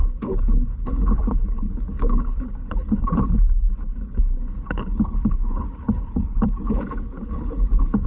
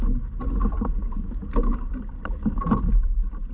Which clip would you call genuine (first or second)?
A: second